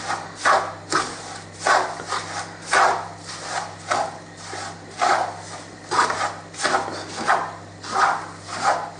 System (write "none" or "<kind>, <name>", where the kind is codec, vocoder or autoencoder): none